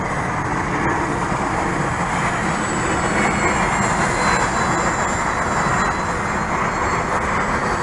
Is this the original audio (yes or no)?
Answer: yes